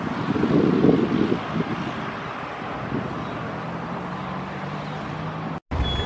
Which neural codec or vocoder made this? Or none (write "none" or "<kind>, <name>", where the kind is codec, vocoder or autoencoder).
none